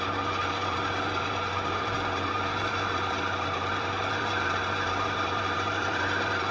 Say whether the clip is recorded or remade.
remade